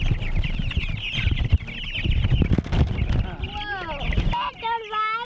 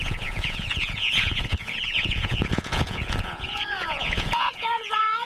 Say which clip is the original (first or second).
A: first